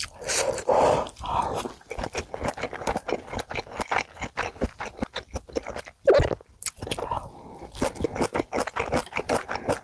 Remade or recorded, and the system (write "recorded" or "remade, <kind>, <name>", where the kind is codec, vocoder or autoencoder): recorded